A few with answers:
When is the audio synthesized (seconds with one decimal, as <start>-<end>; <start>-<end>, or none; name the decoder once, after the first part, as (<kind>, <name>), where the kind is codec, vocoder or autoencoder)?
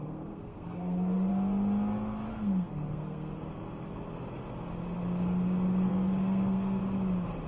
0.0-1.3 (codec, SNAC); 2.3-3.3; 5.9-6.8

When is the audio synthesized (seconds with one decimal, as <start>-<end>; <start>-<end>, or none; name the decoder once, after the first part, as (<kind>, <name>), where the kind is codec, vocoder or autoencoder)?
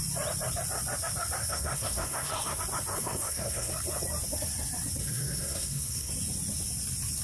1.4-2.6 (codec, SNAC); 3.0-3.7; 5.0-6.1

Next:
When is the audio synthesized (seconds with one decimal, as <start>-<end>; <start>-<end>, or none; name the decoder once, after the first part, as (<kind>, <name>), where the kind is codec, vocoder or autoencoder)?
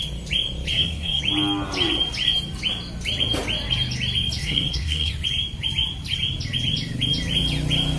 0.7-1.2 (codec, SNAC); 4.4-5.1